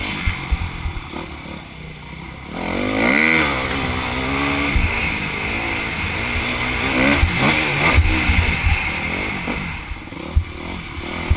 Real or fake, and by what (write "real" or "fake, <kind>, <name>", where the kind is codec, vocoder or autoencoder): real